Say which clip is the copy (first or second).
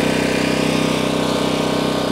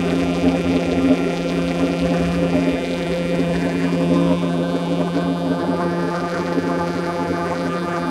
second